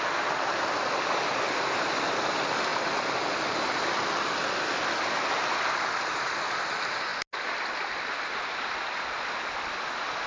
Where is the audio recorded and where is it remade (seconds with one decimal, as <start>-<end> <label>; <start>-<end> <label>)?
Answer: 0.0-10.3 recorded